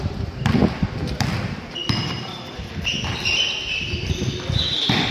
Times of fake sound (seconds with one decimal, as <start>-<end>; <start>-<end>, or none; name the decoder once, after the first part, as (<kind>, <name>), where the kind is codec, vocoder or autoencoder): none